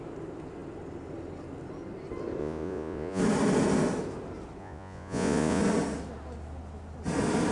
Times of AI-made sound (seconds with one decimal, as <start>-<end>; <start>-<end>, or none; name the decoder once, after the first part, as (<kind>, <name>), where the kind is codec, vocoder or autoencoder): 2.4-3.2 (vocoder, Vocos); 4.6-5.6